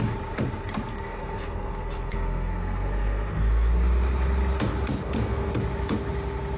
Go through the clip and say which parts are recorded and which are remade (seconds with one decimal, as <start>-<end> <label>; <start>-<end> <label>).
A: 0.0-0.9 recorded; 0.9-3.7 remade; 3.7-5.0 recorded; 5.0-5.5 remade; 5.5-6.6 recorded